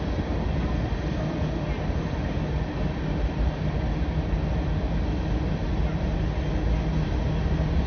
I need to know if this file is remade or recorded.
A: recorded